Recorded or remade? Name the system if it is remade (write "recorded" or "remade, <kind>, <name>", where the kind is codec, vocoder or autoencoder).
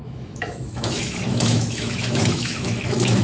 remade, autoencoder, DAC-VAE